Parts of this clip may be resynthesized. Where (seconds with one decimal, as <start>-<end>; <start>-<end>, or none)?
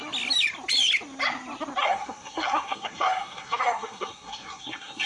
1.8-5.1